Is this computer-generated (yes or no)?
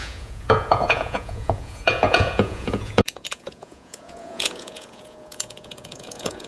yes